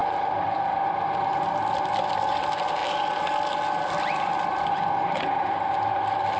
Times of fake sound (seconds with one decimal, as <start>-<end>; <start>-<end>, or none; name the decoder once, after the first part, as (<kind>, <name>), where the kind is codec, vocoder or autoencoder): none

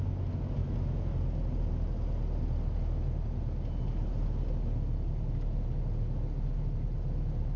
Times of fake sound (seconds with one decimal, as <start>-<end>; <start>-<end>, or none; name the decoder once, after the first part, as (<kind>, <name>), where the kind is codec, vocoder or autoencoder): none

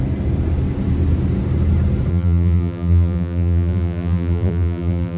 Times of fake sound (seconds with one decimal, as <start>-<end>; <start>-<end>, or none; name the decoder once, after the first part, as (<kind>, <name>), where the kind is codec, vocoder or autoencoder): 2.1-5.2 (vocoder, BigVGAN v2)

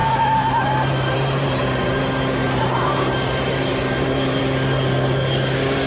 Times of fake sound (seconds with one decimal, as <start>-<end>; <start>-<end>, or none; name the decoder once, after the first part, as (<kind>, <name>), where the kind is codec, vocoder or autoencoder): 0.0-2.0 (vocoder, BigVGAN v2); 2.6-4.4